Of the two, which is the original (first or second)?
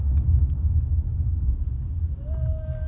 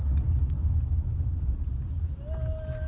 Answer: second